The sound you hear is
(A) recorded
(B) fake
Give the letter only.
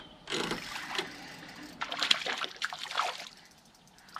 B